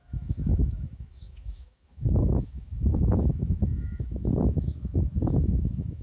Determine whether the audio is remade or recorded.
remade